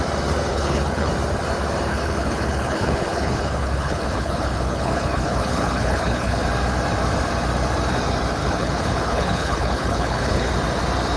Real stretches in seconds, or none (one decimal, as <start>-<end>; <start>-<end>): 0.0-0.5; 1.1-1.9; 6.4-8.4; 10.5-11.2

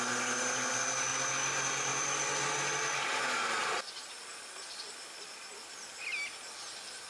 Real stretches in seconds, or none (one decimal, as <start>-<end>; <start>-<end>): 0.0-7.1

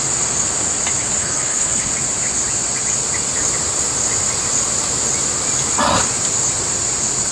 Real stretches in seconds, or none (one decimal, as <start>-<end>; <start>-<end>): 0.0-1.2; 1.9-7.3